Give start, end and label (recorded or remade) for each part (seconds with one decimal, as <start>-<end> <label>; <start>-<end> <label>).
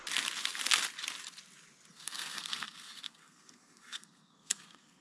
0.0-1.9 recorded; 1.9-5.0 remade